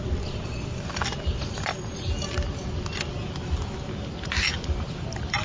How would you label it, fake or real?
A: real